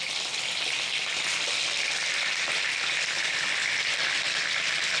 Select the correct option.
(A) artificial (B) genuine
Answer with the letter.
B